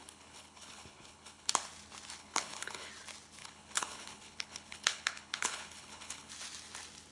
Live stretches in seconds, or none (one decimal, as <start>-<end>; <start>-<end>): 1.5-2.2; 2.9-3.4; 6.3-7.1

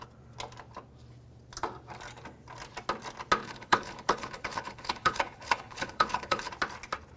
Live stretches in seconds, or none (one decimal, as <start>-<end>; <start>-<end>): 0.0-3.4; 6.5-7.2

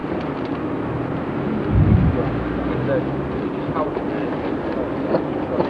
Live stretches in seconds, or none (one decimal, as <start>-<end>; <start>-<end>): 0.0-5.7

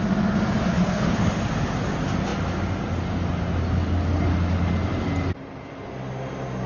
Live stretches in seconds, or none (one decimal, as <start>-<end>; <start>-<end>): 0.0-0.7; 1.3-6.7

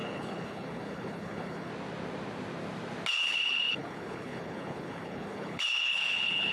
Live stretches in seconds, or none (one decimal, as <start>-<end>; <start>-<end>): 1.7-3.1

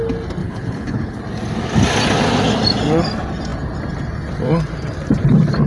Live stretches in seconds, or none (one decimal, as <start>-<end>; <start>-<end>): 0.0-0.4; 1.2-5.7

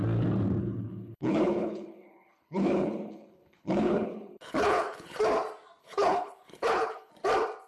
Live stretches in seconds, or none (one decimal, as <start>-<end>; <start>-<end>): 0.0-0.6; 5.2-5.8; 7.1-7.7

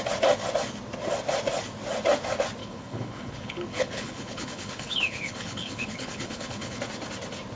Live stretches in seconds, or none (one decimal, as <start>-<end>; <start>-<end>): 0.0-2.6; 6.8-7.6